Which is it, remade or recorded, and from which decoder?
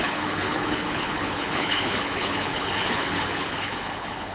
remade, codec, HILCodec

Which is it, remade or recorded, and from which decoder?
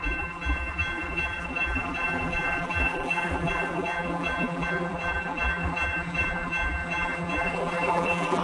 remade, vocoder, BigVGAN v2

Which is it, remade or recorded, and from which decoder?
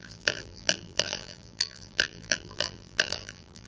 remade, vocoder, BigVGAN v2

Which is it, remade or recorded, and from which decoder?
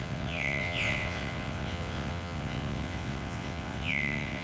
remade, vocoder, WaveNeXt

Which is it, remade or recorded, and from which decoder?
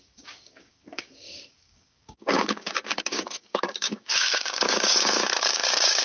remade, codec, DAC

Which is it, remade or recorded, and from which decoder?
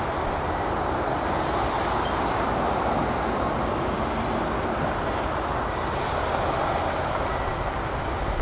recorded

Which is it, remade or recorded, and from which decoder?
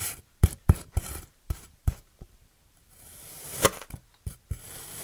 remade, vocoder, BigVGAN v2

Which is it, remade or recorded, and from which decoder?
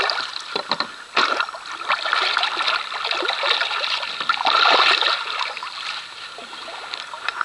recorded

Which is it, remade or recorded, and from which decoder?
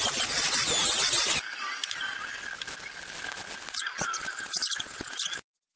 recorded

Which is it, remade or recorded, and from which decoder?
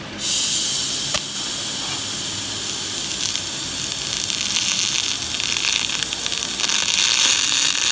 recorded